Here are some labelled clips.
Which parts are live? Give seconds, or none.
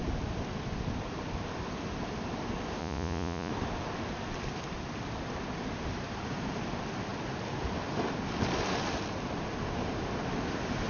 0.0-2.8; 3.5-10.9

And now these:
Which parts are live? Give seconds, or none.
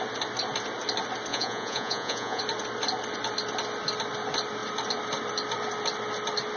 0.0-1.3; 2.4-6.6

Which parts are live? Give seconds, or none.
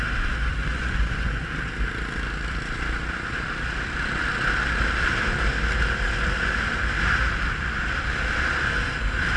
0.0-0.5; 1.5-9.4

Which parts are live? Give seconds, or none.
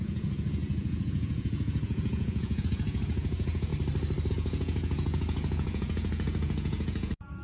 3.7-4.3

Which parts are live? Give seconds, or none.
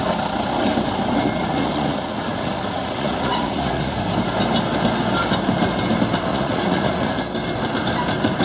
0.0-1.4; 4.0-6.3; 7.2-8.4